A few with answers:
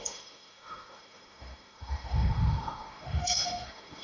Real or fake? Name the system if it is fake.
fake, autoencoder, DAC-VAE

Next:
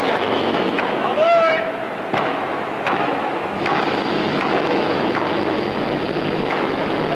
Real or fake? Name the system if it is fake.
fake, autoencoder, DAC-VAE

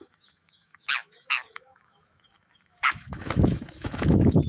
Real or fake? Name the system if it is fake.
fake, autoencoder, DAC-VAE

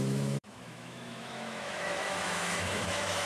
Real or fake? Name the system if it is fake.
fake, autoencoder, DAC-VAE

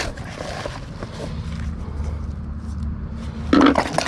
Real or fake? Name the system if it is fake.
real